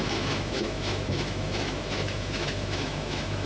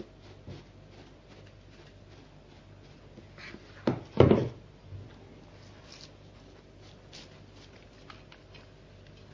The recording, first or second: second